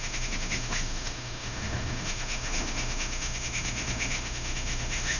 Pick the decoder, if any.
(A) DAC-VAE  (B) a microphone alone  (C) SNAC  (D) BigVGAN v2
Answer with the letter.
A